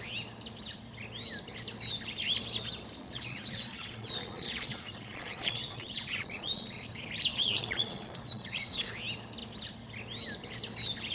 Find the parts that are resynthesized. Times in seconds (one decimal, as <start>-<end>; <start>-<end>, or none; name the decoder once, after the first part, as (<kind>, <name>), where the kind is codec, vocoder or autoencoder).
3.0-6.8 (vocoder, Vocos); 7.3-8.9